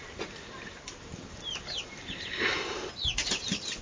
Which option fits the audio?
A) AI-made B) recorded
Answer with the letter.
B